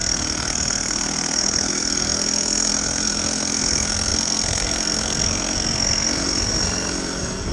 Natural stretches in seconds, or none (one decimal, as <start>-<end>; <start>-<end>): none